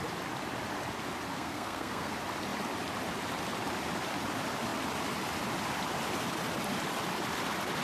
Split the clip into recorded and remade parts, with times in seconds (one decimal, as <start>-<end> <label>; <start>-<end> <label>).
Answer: 0.0-1.3 recorded; 1.3-2.1 remade; 2.1-7.8 recorded